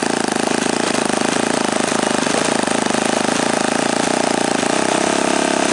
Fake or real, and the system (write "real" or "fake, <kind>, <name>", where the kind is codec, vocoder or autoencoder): real